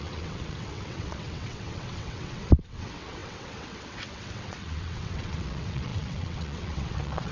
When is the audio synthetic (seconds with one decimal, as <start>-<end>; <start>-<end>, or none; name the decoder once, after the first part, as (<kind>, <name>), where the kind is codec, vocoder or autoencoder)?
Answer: 0.0-7.3 (vocoder, WaveNeXt)